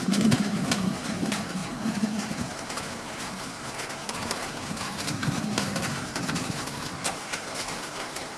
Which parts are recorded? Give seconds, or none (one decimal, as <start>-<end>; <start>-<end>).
none